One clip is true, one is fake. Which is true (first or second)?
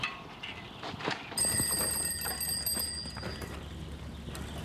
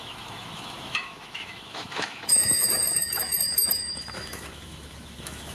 first